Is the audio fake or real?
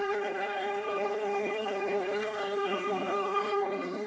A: fake